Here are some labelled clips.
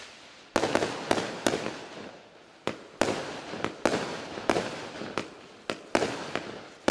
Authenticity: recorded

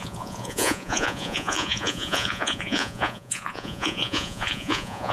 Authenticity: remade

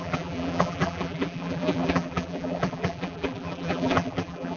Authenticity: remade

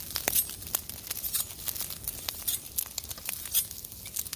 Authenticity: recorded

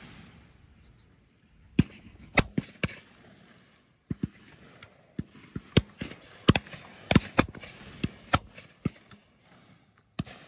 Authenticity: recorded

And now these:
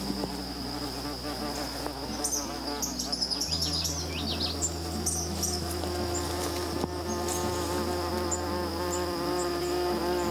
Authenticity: recorded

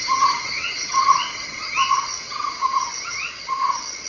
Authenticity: remade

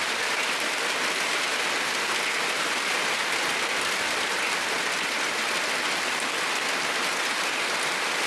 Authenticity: recorded